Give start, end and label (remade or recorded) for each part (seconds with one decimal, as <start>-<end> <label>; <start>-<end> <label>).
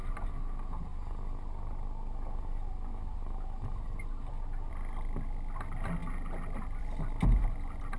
0.0-8.0 recorded